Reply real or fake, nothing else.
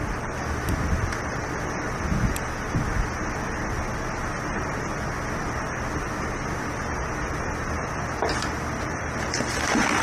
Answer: real